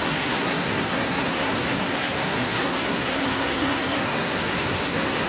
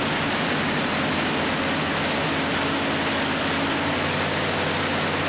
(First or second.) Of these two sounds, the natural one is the second